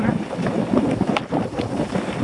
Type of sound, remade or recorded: recorded